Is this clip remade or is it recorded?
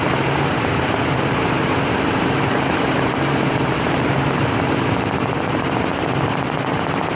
remade